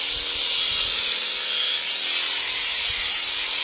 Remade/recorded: recorded